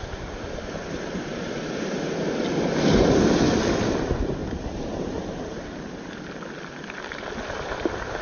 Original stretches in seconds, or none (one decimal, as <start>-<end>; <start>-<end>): 0.0-4.4; 5.8-8.2

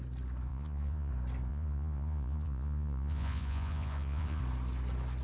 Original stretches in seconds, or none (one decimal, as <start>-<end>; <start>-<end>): 0.0-0.5; 1.1-1.5; 4.4-5.2

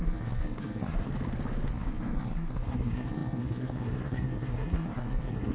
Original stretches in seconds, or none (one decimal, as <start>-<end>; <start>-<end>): 1.1-1.7